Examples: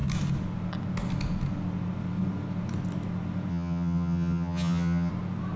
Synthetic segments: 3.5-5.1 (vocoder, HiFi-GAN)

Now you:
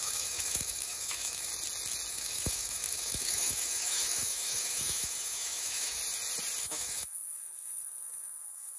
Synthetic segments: 0.0-1.5 (autoencoder, DAC-VAE); 2.1-6.0; 6.6-8.8

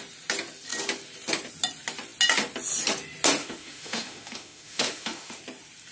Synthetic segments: 3.4-5.4 (autoencoder, DAC-VAE)

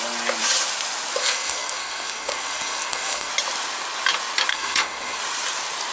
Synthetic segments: 1.2-3.3 (codec, SNAC); 4.5-5.2

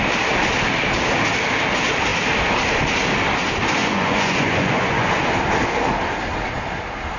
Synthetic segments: 3.8-5.1 (vocoder, Vocos)

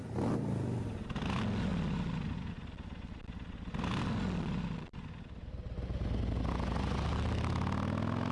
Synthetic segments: none

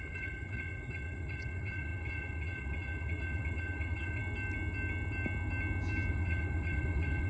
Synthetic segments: 0.0-4.2 (vocoder, WaveNeXt); 6.1-7.3